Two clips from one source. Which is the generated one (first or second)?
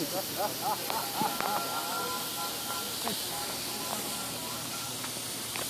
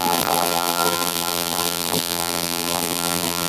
second